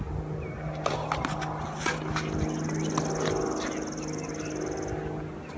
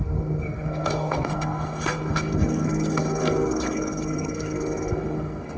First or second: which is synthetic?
second